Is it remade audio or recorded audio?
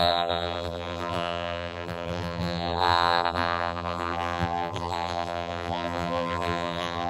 remade